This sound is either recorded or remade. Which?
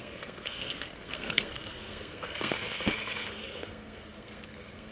remade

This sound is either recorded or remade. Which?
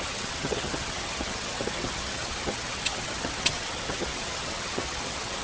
remade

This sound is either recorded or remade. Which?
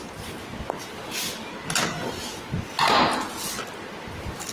recorded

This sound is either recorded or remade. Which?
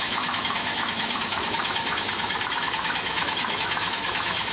remade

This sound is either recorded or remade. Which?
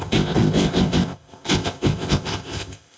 remade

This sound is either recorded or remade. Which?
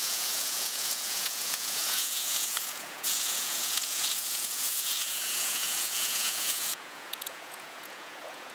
remade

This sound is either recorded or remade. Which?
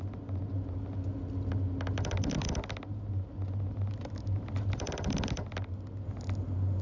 recorded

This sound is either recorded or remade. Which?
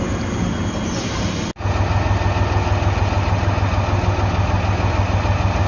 recorded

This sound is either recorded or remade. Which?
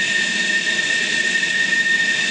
recorded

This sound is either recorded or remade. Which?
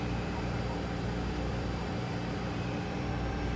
remade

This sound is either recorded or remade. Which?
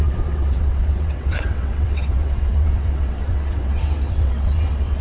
remade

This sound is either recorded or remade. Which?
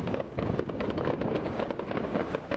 remade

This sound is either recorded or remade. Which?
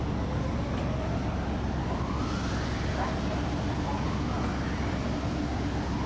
recorded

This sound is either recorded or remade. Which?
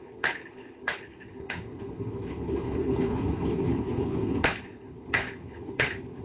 remade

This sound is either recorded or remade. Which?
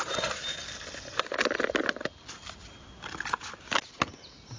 recorded